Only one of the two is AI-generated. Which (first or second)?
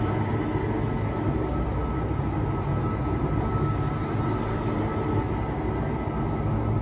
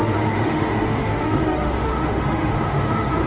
second